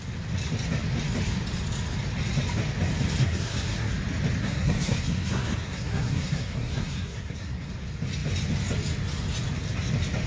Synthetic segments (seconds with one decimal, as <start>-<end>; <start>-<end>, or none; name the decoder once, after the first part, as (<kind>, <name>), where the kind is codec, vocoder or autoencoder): 3.2-3.9 (codec, SNAC); 4.4-7.7